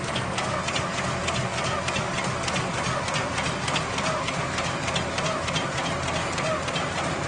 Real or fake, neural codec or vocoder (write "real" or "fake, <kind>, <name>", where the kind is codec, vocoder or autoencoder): real